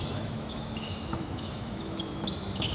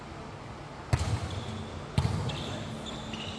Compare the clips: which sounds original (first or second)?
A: second